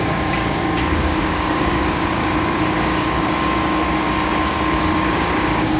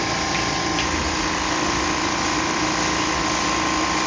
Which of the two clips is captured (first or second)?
second